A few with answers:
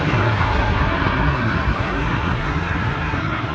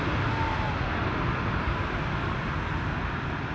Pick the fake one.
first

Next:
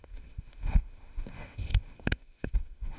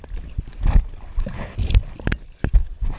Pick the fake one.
first